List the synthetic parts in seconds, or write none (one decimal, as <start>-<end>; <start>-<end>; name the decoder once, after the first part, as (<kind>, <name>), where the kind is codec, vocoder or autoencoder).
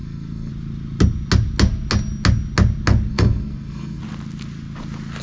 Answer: 0.0-0.5 (codec, SNAC); 3.1-4.0